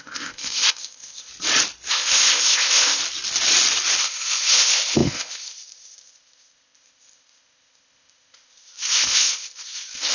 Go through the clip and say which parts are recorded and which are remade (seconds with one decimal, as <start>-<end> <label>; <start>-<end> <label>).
0.0-1.3 remade; 1.3-1.9 recorded; 1.9-3.0 remade; 3.0-4.0 recorded; 4.0-10.1 remade